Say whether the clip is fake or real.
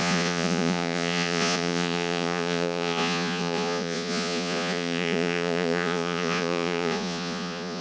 fake